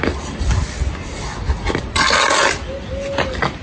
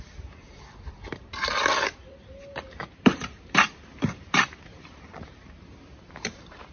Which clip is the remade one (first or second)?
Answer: second